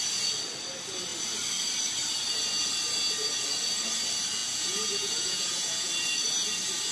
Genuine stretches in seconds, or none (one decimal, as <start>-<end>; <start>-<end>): 0.0-4.4; 5.9-6.9